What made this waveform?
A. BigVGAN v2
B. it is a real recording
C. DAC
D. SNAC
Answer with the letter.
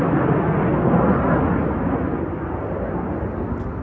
B